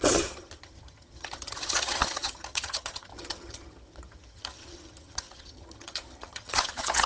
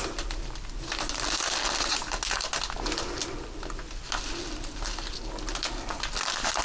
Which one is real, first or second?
second